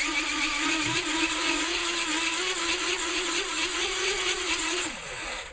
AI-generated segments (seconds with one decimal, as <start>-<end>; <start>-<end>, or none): 0.0-1.8; 2.8-5.5